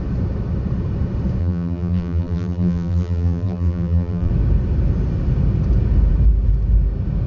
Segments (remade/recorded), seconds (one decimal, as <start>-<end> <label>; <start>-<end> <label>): 0.0-1.4 recorded; 1.4-4.3 remade; 4.3-7.3 recorded